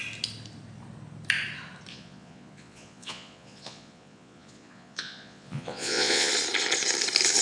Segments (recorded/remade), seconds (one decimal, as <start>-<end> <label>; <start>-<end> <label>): 0.0-1.9 recorded; 1.9-6.3 remade; 6.3-7.4 recorded